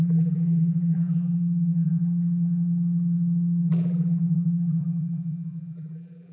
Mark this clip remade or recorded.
remade